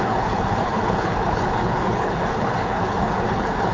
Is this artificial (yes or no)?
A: yes